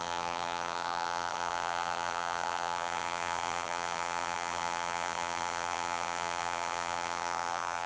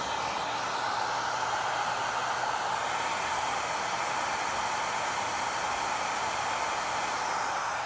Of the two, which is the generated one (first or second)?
first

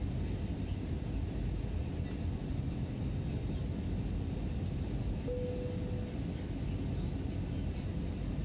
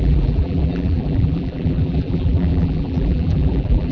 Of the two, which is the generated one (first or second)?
second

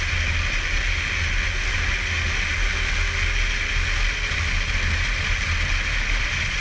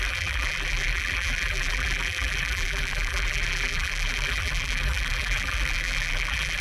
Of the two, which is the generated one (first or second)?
second